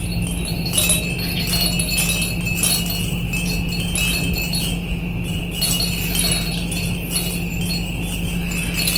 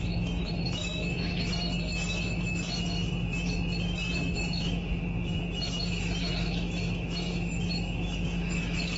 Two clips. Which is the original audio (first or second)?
first